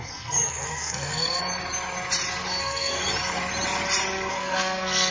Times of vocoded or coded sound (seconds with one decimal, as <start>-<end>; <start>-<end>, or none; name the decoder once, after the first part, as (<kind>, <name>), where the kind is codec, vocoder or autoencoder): 0.0-1.4 (codec, SNAC); 2.6-3.0; 4.3-5.1